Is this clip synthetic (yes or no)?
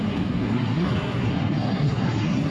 yes